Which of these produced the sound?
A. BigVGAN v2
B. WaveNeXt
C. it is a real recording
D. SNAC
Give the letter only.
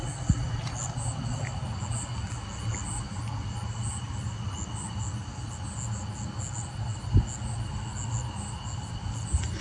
C